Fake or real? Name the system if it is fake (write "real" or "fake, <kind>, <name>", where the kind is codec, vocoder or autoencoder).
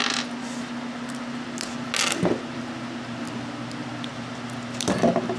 real